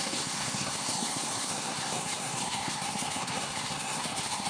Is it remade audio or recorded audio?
remade